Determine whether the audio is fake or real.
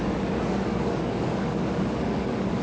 fake